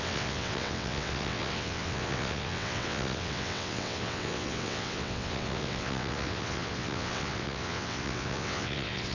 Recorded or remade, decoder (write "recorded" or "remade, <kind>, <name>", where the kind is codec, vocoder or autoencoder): remade, vocoder, WaveNeXt